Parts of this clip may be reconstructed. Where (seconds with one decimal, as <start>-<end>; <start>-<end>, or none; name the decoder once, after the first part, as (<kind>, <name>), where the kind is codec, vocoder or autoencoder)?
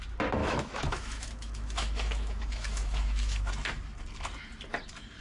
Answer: 0.4-3.5 (autoencoder, DAC-VAE)